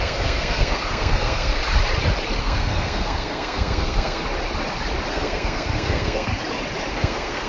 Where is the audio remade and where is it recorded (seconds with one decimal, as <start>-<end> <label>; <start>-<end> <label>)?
0.0-1.6 remade; 1.6-2.4 recorded; 2.4-4.2 remade; 4.2-5.1 recorded; 5.1-6.3 remade; 6.3-6.9 recorded; 6.9-7.5 remade